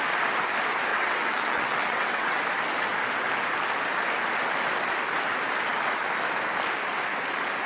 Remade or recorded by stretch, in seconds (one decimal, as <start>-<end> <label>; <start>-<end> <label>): 0.0-0.9 recorded; 0.9-2.4 remade; 2.4-7.7 recorded